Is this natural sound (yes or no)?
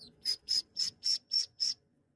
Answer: no